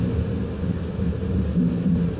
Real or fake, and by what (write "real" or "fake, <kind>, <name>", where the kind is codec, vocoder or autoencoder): real